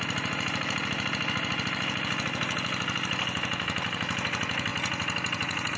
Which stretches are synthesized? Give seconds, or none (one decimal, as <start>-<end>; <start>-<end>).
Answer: none

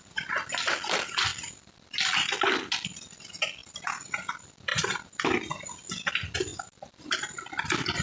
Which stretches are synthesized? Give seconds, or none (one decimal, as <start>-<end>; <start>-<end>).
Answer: none

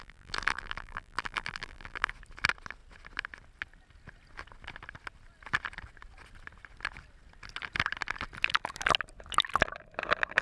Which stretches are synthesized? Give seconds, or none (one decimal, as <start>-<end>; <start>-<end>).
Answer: 0.0-2.1

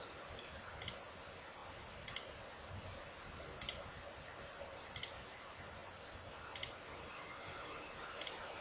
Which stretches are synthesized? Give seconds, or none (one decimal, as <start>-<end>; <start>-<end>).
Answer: none

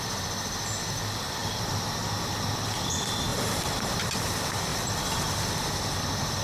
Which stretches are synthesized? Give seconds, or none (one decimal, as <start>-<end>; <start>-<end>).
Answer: 1.4-2.5; 3.3-4.3; 4.7-5.3

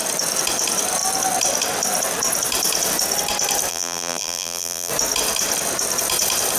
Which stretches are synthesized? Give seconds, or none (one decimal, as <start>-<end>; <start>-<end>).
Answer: 3.7-4.9

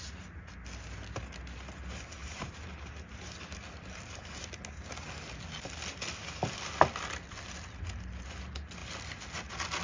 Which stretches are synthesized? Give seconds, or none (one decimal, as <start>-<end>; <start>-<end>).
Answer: 2.2-3.1